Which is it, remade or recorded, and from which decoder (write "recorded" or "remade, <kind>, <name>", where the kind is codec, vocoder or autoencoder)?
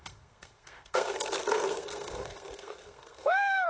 remade, codec, SNAC